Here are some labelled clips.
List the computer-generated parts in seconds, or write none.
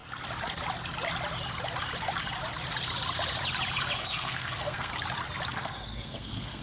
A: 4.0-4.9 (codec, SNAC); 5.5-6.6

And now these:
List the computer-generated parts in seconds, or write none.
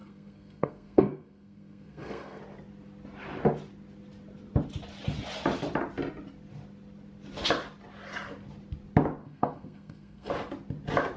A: 0.0-2.4 (codec, SNAC); 9.2-10.3